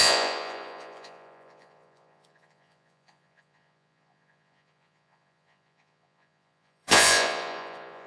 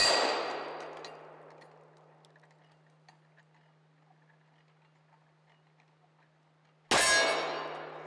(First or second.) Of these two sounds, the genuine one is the second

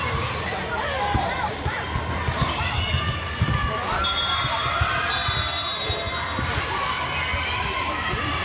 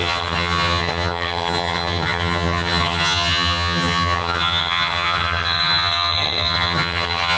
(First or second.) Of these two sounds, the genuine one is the first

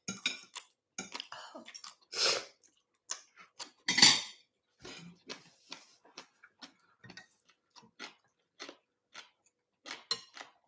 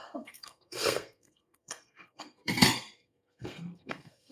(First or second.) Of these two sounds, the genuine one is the first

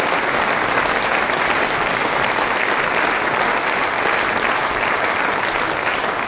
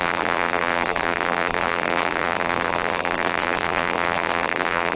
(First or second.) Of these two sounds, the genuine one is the first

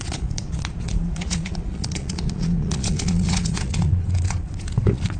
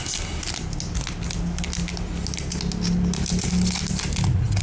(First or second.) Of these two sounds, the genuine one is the second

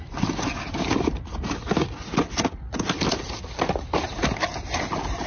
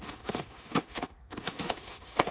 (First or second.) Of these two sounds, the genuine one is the first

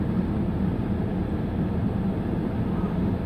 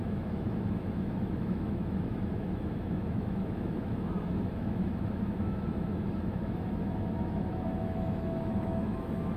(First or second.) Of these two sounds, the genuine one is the first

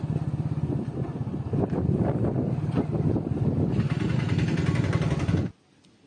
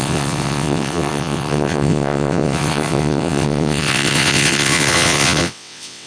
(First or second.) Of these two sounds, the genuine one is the first